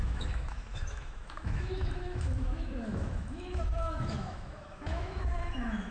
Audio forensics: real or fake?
fake